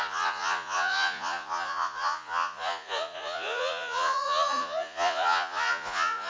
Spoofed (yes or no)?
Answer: yes